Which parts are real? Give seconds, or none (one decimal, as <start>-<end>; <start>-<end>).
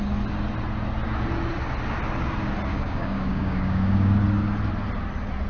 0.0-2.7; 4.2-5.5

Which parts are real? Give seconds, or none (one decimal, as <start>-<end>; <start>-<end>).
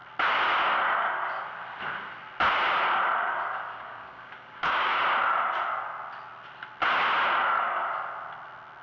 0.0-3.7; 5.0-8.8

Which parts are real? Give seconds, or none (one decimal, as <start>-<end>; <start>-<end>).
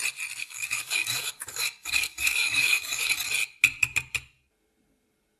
0.0-0.4; 3.1-5.4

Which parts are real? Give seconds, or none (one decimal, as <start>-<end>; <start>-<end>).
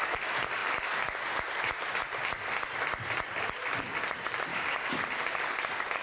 0.0-4.5; 5.0-6.0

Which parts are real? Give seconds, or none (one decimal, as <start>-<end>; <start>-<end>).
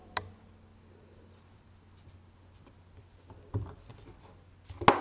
0.0-5.0